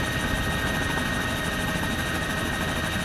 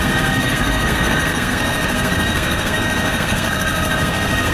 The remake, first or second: second